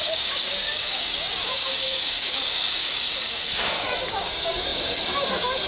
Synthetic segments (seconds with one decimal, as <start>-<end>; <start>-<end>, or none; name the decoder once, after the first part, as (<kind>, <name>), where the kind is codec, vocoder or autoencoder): 0.0-5.7 (codec, DAC)